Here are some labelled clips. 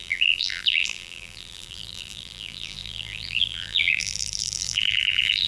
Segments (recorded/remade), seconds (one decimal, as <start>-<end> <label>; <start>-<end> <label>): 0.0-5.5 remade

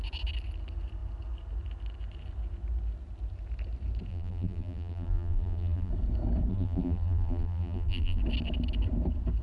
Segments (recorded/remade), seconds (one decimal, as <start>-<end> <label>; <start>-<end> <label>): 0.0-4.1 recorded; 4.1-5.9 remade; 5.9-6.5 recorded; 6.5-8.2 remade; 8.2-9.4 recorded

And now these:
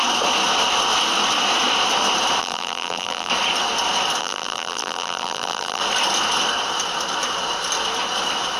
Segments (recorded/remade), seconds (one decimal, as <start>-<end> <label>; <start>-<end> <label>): 0.0-2.4 recorded; 2.4-3.3 remade; 3.3-4.2 recorded; 4.2-5.8 remade; 5.8-8.6 recorded

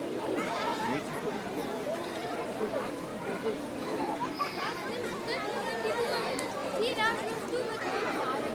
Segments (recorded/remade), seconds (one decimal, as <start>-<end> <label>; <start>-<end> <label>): 0.0-0.7 remade; 0.7-1.3 recorded; 1.3-3.1 remade; 3.1-6.0 recorded; 6.0-6.6 remade; 6.6-8.1 recorded; 8.1-8.5 remade

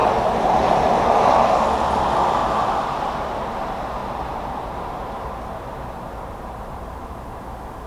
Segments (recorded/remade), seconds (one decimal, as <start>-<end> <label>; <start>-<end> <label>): 0.0-0.9 remade; 0.9-2.4 recorded; 2.4-3.5 remade; 3.5-4.0 recorded; 4.0-7.4 remade; 7.4-7.9 recorded

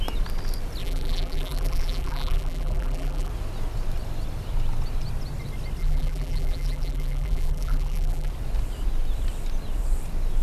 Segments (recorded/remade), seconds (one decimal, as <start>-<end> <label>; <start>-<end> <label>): 0.0-0.8 recorded; 0.8-3.3 remade; 3.3-5.8 recorded; 5.8-8.3 remade; 8.3-10.4 recorded

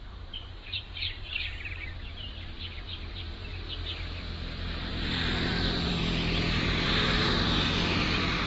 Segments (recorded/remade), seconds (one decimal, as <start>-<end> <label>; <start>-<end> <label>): 0.0-3.5 remade; 3.5-4.2 recorded; 4.2-6.0 remade; 6.0-6.5 recorded; 6.5-8.5 remade